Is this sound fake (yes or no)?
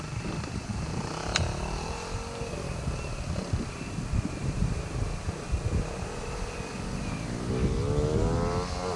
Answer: no